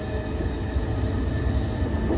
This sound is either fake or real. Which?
real